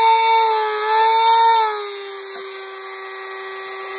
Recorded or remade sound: recorded